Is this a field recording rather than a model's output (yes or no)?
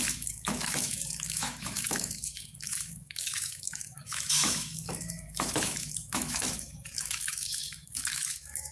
no